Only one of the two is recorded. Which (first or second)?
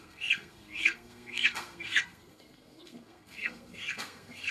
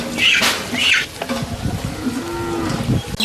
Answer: second